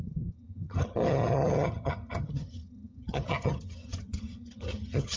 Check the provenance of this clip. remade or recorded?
remade